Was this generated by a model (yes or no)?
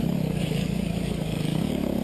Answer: yes